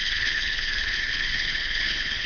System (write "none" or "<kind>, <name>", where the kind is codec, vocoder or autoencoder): codec, HILCodec